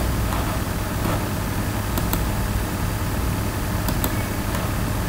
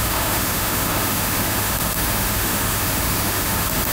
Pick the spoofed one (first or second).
second